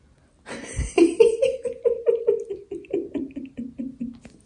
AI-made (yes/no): no